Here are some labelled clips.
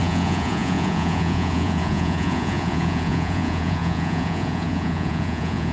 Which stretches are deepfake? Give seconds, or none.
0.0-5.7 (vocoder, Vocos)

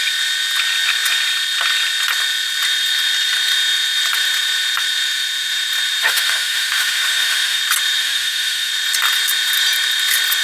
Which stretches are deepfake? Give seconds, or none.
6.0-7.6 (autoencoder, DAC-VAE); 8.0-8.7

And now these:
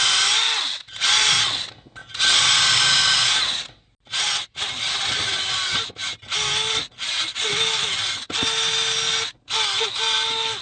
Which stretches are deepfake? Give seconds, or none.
none